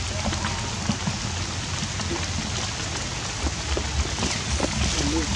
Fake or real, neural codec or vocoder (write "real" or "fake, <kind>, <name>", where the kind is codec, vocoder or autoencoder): real